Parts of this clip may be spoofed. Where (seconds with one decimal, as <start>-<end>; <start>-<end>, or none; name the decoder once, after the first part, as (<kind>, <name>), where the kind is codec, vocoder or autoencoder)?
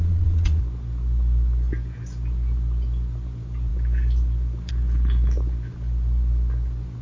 0.0-0.6 (vocoder, Vocos)